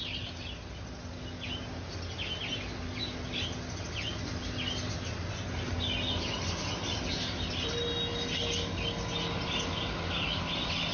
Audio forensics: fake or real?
real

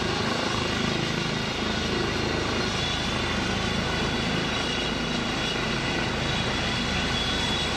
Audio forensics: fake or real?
real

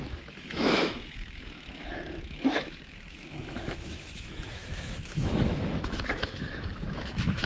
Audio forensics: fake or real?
fake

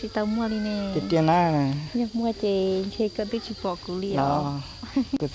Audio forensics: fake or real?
real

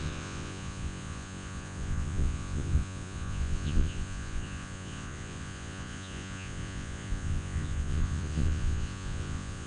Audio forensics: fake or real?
fake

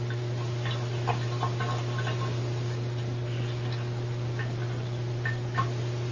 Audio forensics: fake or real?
real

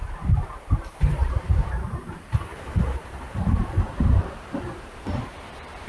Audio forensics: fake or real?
fake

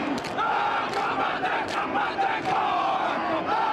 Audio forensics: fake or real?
real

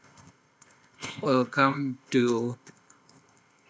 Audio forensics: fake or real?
fake